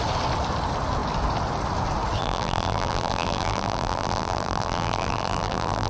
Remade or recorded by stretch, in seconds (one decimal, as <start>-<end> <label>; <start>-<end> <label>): 0.0-2.2 recorded; 2.2-5.9 remade